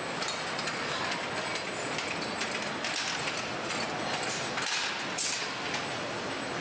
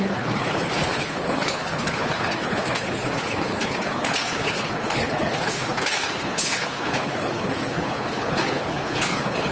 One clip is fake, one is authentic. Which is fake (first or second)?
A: second